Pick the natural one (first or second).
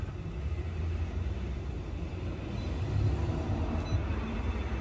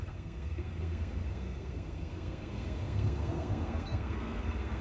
first